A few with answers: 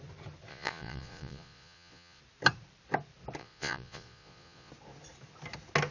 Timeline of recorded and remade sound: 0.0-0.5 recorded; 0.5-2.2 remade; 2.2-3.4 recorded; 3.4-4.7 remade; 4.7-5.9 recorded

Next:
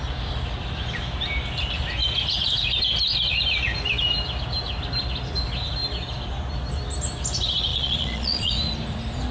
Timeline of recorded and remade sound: 0.0-7.7 recorded; 7.7-8.5 remade; 8.5-9.3 recorded

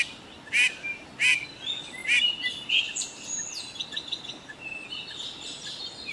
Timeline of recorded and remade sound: 0.0-6.1 recorded